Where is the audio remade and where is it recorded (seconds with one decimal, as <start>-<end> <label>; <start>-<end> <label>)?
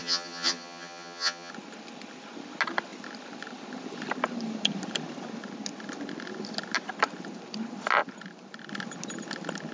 0.0-1.5 remade; 1.5-9.7 recorded